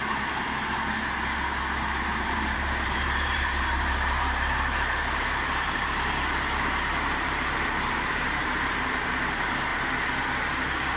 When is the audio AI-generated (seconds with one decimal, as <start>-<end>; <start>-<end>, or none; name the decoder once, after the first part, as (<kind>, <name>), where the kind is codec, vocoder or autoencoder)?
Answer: 0.0-9.7 (vocoder, BigVGAN v2)

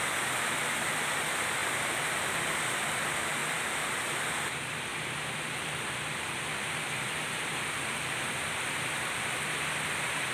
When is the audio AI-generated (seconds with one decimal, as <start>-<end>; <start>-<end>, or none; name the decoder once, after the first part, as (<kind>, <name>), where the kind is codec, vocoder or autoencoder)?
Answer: 1.6-2.4 (vocoder, BigVGAN v2); 3.4-4.1

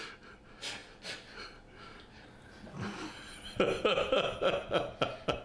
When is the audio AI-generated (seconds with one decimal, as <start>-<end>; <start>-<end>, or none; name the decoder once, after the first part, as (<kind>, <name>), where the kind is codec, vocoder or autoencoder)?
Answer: none